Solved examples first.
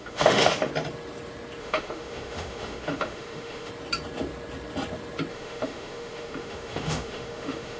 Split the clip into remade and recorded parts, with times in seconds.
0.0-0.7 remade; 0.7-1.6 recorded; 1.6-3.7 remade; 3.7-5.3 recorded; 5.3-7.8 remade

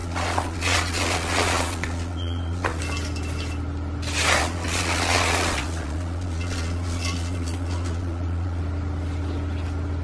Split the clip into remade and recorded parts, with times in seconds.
0.0-2.8 remade; 2.8-4.4 recorded; 4.4-8.6 remade; 8.6-10.0 recorded

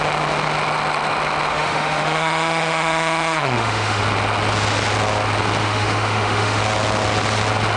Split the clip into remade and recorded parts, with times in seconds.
0.0-1.5 recorded; 1.5-4.0 remade; 4.0-5.6 recorded; 5.6-6.6 remade; 6.6-7.8 recorded

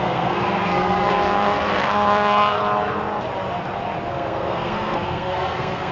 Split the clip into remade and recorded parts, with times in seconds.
0.0-2.6 remade; 2.6-4.1 recorded; 4.1-5.9 remade

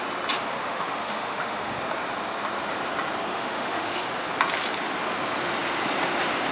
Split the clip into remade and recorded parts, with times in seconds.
0.0-0.6 recorded; 0.6-1.8 remade; 1.8-3.3 recorded; 3.3-4.1 remade; 4.1-6.5 recorded

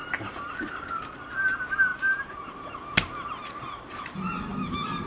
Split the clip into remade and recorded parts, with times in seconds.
0.0-0.5 remade; 0.5-1.9 recorded; 1.9-2.5 remade; 2.5-4.5 recorded; 4.5-5.1 remade

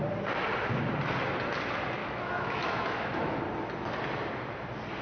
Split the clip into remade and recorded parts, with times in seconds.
0.0-2.0 recorded; 2.0-3.4 remade; 3.4-5.0 recorded